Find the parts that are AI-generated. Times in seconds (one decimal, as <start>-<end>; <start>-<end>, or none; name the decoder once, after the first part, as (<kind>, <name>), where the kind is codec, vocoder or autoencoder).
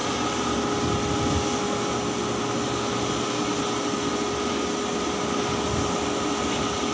none